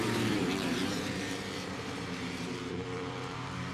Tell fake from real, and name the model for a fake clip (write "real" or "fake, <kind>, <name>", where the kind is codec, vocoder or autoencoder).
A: fake, vocoder, BigVGAN v2